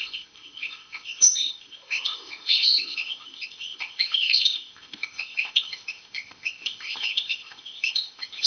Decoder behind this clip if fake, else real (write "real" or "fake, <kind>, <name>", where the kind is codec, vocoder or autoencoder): fake, codec, ZipCodec